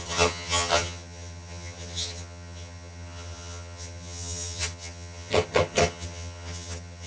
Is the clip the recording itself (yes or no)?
no